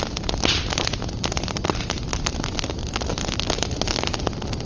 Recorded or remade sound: recorded